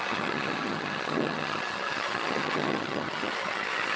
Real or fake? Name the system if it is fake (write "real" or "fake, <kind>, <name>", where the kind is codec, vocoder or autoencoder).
fake, vocoder, HiFi-GAN